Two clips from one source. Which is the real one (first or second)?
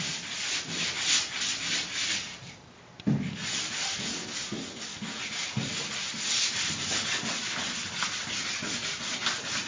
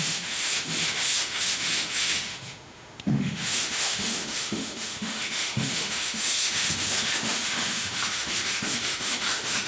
first